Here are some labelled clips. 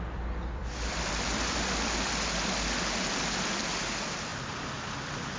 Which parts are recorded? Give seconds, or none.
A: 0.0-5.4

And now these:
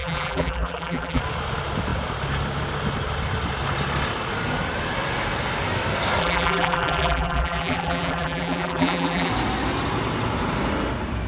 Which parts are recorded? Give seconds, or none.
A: 1.2-6.2; 9.3-11.3

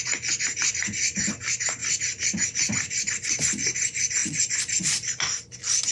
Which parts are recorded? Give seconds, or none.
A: 0.0-1.8; 3.1-4.2; 4.7-5.9

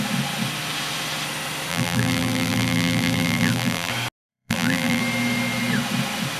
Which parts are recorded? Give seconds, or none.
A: 0.0-1.7; 3.9-4.3; 5.0-6.4

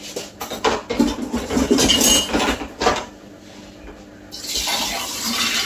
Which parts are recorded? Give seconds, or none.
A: 0.0-5.7